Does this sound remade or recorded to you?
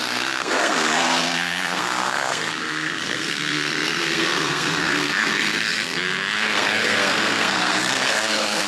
remade